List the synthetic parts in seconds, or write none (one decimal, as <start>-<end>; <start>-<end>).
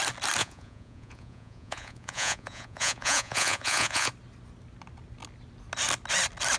0.4-4.1